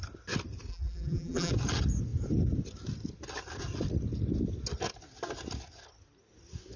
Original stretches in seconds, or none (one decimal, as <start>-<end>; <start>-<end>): 0.0-0.7; 1.5-6.8

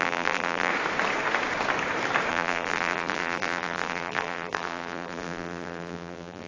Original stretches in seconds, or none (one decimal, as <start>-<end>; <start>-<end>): 0.7-2.3

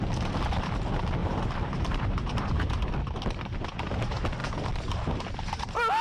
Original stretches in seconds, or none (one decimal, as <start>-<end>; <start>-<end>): 0.0-1.2; 2.9-6.0

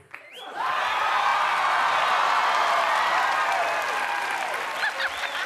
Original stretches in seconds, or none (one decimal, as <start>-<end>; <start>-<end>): 0.0-5.5